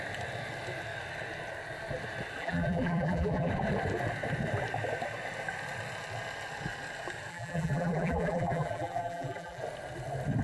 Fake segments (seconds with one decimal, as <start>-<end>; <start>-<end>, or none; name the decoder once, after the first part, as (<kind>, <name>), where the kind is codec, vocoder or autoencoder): 2.4-3.5 (vocoder, BigVGAN v2); 7.3-9.6